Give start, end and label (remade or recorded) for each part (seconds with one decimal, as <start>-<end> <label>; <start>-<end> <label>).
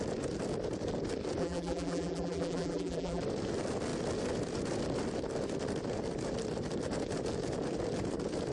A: 0.0-1.4 recorded; 1.4-3.2 remade; 3.2-8.5 recorded